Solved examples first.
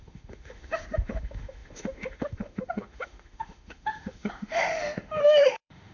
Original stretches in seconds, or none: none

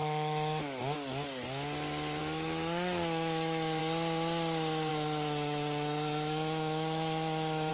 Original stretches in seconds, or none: 0.8-2.2; 3.8-4.9